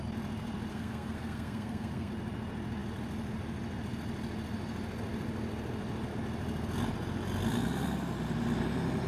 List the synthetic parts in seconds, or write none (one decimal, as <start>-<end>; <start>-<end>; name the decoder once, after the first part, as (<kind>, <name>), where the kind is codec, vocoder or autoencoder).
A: 0.7-2.1 (codec, SNAC)